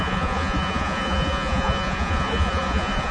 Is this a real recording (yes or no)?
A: no